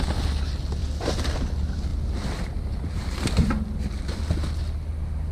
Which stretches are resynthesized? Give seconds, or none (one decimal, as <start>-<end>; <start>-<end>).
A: 0.8-1.5; 1.9-4.3